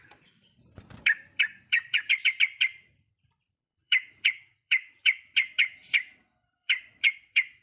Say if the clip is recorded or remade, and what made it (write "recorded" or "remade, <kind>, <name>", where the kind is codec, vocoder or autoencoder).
remade, vocoder, BigVGAN v2